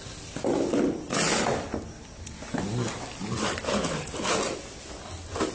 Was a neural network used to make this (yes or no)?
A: no